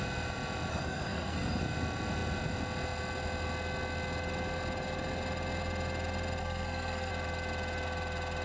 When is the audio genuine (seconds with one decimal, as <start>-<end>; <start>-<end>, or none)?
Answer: 0.0-0.7; 1.6-6.4; 7.1-8.4